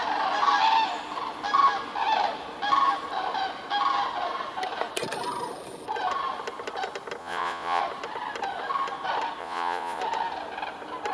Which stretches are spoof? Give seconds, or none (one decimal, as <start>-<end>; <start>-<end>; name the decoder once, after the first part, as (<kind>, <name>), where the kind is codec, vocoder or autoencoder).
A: 7.2-7.8 (vocoder, Vocos); 9.4-10.0